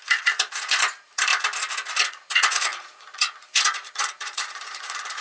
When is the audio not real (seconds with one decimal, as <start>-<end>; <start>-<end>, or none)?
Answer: 0.0-1.3; 2.0-5.2